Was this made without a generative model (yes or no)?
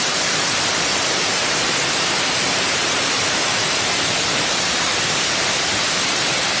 no